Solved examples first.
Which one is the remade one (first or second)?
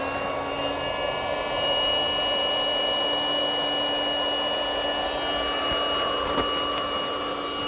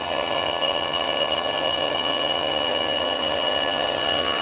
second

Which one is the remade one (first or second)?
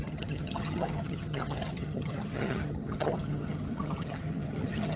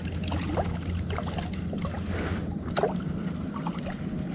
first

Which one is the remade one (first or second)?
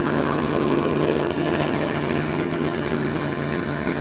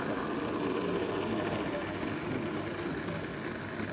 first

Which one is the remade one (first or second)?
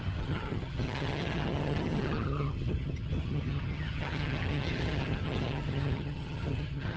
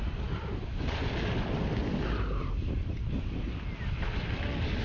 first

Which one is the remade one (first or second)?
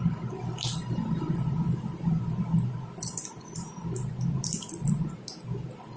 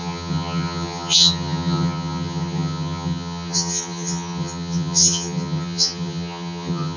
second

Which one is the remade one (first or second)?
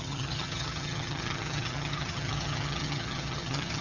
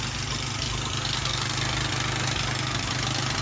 first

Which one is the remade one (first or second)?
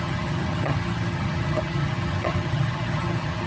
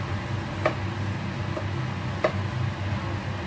first